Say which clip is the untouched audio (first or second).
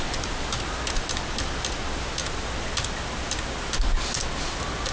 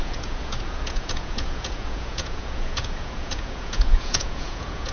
first